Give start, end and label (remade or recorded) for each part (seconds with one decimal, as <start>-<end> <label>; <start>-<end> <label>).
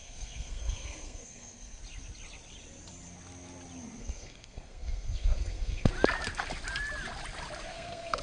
0.0-1.8 remade; 1.8-4.0 recorded; 4.0-5.9 remade; 5.9-7.7 recorded; 7.7-8.2 remade